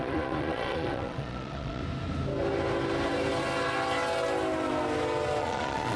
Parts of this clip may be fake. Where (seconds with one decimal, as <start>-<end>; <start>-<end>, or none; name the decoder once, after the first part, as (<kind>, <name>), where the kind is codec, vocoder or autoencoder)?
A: 0.0-1.8 (vocoder, Vocos); 5.4-6.0